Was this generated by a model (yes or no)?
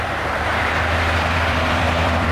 yes